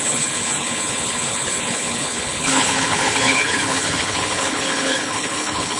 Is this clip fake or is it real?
fake